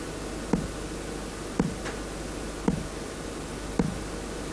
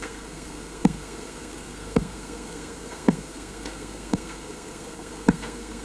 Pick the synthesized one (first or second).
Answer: second